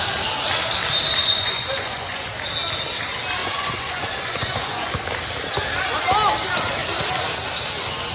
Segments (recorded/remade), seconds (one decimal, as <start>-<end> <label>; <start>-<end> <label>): 0.0-1.2 recorded; 1.2-2.3 remade; 2.3-3.4 recorded; 3.4-4.9 remade; 4.9-8.1 recorded